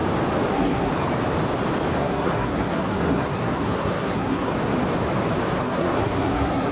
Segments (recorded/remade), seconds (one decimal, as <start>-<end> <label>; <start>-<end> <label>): 0.0-0.5 recorded; 0.5-0.9 remade; 0.9-2.0 recorded; 2.0-4.5 remade; 4.5-5.6 recorded; 5.6-6.7 remade